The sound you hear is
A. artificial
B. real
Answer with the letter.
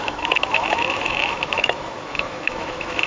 A